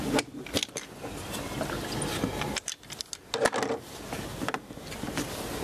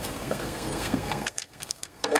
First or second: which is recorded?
first